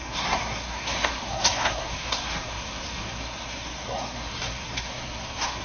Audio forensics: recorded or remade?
remade